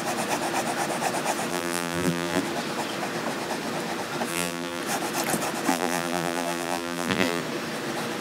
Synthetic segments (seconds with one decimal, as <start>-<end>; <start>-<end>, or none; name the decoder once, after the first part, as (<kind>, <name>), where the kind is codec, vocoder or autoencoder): 1.5-2.4 (vocoder, BigVGAN v2); 4.3-4.8; 5.7-7.4